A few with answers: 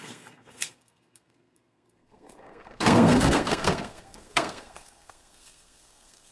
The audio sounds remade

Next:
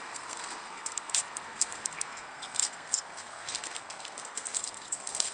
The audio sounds remade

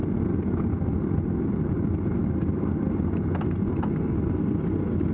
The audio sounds recorded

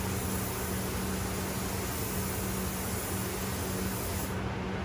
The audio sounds recorded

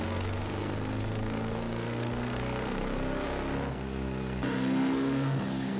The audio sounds remade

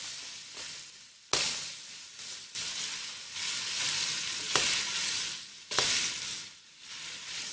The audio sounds recorded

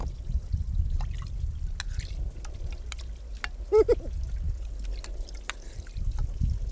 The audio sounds recorded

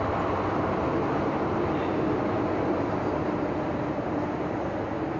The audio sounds recorded